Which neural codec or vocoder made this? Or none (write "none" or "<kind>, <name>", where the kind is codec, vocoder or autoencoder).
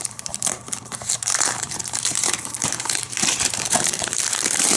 vocoder, BigVGAN v2